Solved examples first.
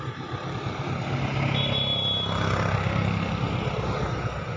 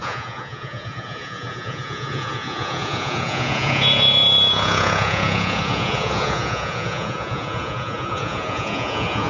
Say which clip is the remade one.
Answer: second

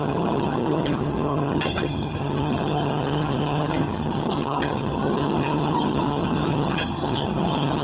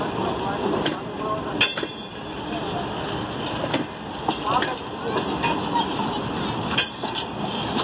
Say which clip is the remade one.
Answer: first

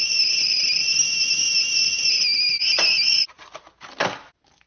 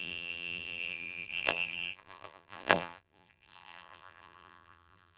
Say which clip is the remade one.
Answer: second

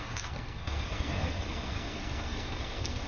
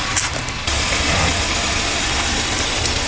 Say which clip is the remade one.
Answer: first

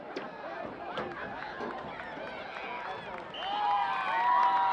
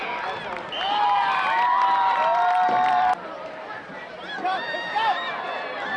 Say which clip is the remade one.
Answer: second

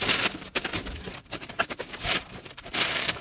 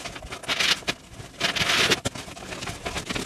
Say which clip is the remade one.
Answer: first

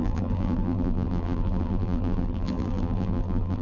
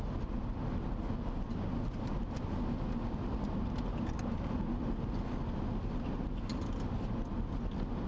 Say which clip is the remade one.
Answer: first